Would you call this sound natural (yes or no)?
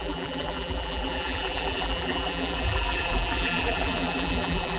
no